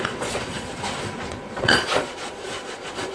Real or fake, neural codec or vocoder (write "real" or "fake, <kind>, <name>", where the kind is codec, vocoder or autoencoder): fake, vocoder, Vocos